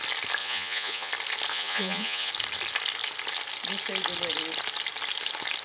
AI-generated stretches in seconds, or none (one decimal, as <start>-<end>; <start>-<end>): 0.4-1.1; 1.5-2.3